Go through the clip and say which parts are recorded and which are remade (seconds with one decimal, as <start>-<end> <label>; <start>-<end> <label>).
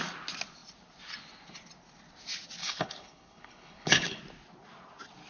0.0-2.6 recorded; 2.6-4.2 remade; 4.2-5.3 recorded